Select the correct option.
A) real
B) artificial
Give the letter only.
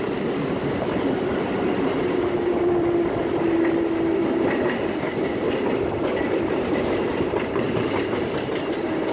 B